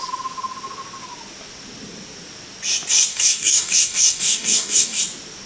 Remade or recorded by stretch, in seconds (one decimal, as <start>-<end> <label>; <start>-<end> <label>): 0.0-3.1 recorded; 3.1-5.0 remade; 5.0-5.5 recorded